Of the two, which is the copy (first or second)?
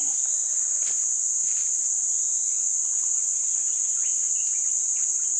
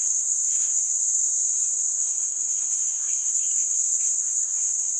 second